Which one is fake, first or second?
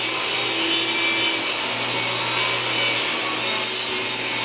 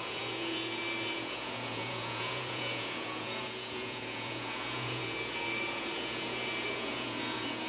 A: second